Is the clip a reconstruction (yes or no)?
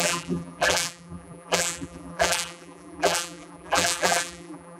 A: yes